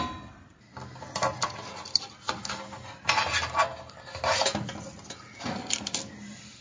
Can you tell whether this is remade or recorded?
recorded